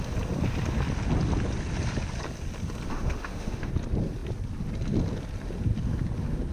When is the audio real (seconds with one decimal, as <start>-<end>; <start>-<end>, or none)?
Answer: 0.0-2.9; 3.7-6.5